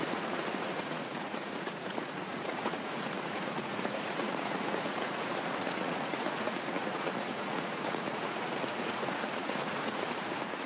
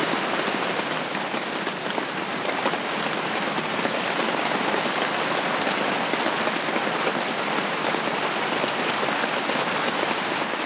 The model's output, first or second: first